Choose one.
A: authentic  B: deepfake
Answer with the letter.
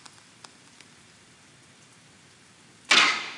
A